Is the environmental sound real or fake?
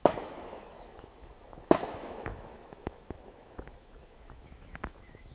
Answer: fake